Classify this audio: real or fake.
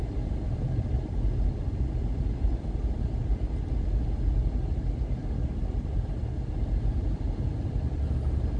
real